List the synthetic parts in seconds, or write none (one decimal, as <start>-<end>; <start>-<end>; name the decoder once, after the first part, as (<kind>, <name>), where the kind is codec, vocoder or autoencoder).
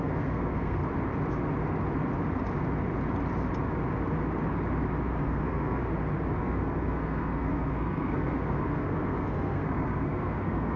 0.0-0.8 (codec, SNAC); 5.0-5.8; 6.4-10.8